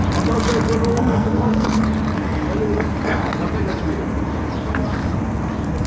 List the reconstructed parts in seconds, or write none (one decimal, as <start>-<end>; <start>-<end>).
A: 0.9-1.8